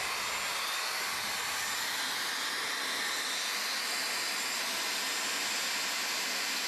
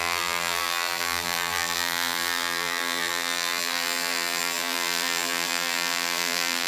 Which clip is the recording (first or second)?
first